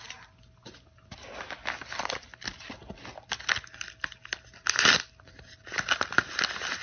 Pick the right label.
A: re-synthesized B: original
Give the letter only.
B